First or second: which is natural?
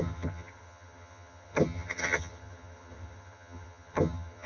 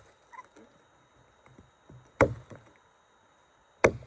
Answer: second